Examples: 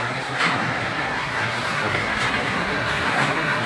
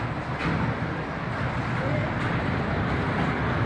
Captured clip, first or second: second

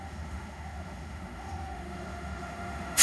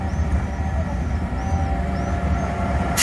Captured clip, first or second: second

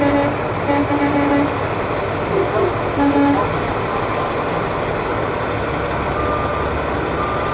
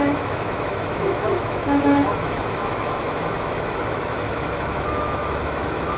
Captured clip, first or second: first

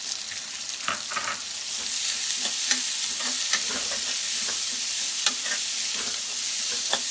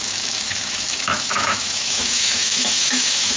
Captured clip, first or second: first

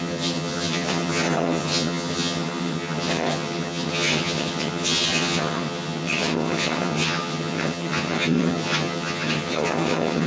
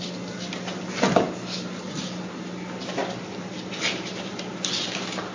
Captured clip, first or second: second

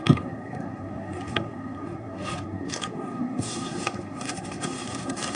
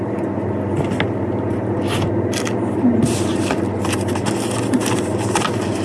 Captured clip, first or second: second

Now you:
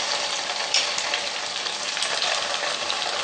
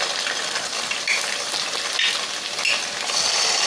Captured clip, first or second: second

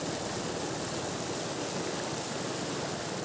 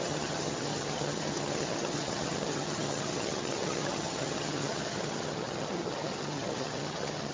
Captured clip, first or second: first